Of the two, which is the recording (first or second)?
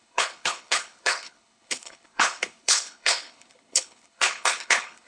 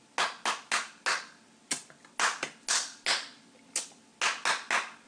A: second